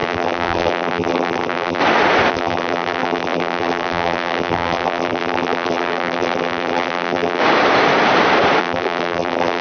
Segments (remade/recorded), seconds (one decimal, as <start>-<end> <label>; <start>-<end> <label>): 0.0-1.8 remade; 1.8-2.3 recorded; 2.3-7.4 remade; 7.4-8.6 recorded; 8.6-9.6 remade

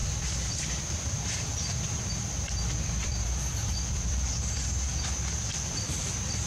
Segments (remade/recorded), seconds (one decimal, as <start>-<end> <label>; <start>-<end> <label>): 0.0-6.5 remade

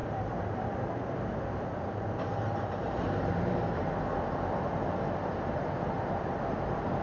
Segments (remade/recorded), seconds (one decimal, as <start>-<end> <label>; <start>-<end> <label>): 0.0-3.8 remade; 3.8-7.0 recorded

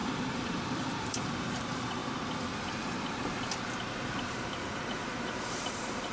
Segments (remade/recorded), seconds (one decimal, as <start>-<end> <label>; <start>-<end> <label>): 0.0-2.0 remade; 2.0-4.2 recorded; 4.2-6.1 remade

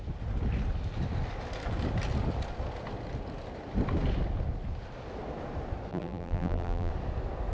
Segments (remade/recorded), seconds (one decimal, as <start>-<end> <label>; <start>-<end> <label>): 0.0-5.9 recorded; 5.9-6.9 remade; 6.9-7.5 recorded

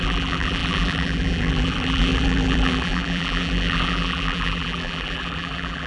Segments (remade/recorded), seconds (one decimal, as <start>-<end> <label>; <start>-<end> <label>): 0.0-5.9 remade

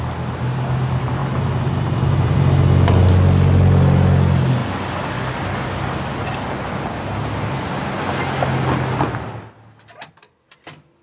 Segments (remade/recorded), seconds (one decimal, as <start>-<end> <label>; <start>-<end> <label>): 0.0-1.2 recorded; 1.2-2.4 remade; 2.4-11.0 recorded

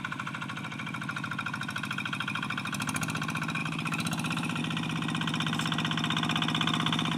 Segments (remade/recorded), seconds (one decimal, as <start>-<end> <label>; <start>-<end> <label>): 0.0-3.6 recorded; 3.6-4.6 remade; 4.6-7.2 recorded